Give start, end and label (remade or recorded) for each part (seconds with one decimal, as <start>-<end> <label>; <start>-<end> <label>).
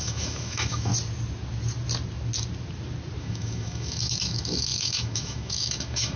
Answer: 0.0-0.9 remade; 0.9-3.2 recorded; 3.2-6.2 remade